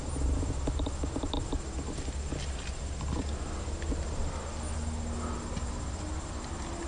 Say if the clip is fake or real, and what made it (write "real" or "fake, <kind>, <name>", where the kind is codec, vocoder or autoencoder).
real